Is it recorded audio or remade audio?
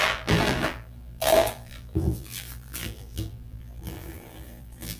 remade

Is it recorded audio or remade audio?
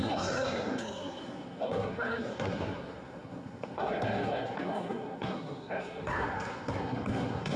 remade